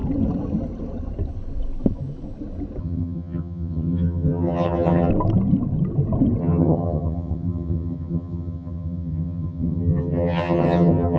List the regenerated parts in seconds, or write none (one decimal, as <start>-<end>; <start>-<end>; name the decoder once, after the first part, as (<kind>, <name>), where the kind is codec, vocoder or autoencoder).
2.8-5.1 (vocoder, HiFi-GAN); 6.4-11.2